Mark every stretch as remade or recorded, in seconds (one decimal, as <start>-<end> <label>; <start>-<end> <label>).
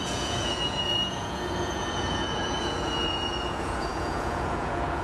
0.0-5.0 remade